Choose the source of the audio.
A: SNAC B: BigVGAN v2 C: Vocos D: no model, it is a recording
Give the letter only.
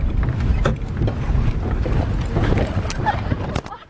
D